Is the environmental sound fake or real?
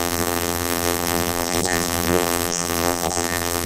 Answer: fake